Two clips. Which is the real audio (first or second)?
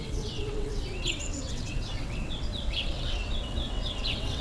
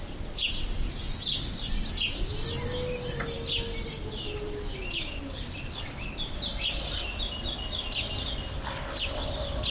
second